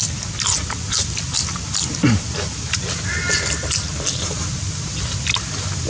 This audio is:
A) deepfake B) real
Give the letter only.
B